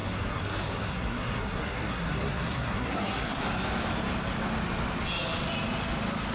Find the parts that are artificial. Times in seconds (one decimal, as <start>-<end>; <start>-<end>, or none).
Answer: 0.0-3.4